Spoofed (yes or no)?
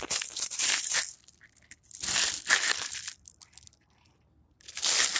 no